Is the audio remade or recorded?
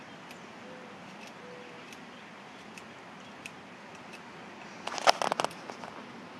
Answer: recorded